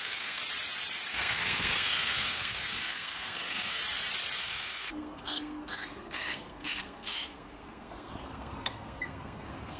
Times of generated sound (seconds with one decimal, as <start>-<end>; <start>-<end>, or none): 0.0-0.4; 1.1-3.8; 4.4-9.8